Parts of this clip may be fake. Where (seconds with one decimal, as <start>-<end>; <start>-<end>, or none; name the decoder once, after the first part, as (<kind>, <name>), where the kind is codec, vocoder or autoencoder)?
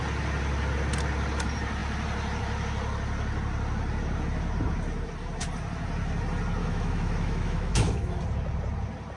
6.6-8.2 (autoencoder, DAC-VAE)